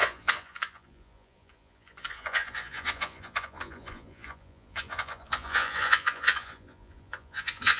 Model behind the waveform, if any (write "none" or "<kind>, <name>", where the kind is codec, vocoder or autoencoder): vocoder, Vocos